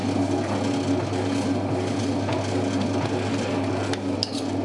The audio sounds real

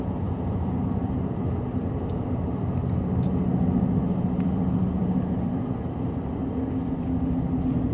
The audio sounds real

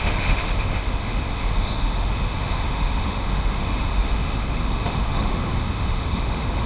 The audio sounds fake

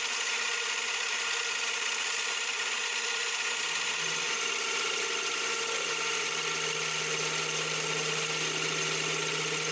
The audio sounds real